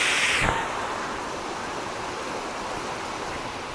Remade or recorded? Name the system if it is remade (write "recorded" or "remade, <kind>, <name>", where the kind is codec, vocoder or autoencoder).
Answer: recorded